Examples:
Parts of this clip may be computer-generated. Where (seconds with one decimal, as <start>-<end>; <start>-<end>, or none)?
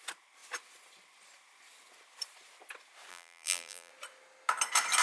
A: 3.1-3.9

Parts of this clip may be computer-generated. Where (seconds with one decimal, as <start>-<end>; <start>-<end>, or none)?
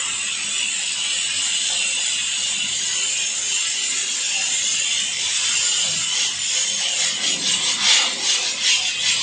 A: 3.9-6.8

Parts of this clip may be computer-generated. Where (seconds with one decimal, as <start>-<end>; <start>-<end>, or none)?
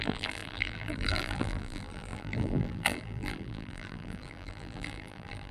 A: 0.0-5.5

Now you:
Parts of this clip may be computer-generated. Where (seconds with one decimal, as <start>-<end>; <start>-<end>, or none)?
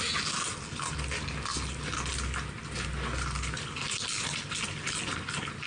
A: none